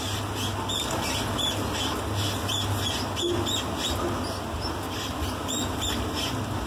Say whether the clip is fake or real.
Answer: real